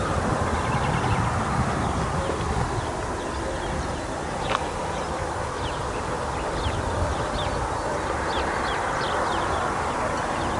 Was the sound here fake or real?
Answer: real